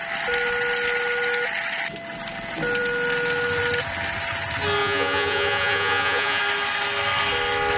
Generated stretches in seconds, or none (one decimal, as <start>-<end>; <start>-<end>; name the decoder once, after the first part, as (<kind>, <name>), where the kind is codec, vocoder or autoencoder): 4.8-6.4 (vocoder, Vocos)